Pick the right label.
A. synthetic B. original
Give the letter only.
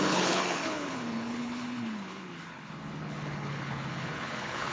A